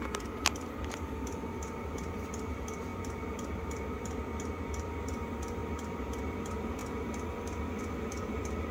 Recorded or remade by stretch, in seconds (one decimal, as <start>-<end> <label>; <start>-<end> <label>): 0.0-8.7 recorded